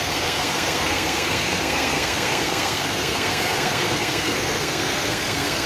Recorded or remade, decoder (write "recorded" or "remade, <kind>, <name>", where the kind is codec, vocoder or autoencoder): remade, codec, SNAC